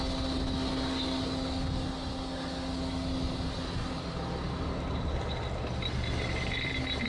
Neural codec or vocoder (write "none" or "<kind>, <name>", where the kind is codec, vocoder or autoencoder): none